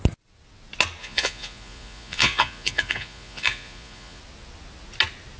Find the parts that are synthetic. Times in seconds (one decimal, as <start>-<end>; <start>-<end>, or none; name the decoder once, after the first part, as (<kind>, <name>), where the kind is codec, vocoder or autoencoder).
1.0-4.2 (vocoder, Vocos)

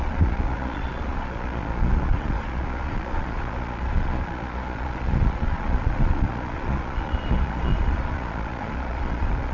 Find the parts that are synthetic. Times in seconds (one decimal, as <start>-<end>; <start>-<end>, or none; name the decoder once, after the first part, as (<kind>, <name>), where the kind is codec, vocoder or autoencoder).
0.0-9.5 (vocoder, Vocos)

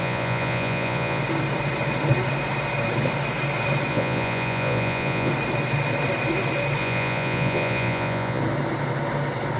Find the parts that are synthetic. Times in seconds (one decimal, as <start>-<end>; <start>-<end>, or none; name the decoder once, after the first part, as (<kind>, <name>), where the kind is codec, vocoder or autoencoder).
0.0-1.2 (vocoder, Vocos); 3.9-5.3; 6.8-8.4

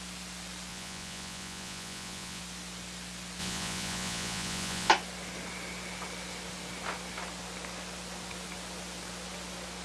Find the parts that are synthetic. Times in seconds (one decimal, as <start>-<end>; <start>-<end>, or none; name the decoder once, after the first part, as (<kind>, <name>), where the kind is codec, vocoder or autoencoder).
0.7-2.4 (vocoder, Vocos); 3.4-4.9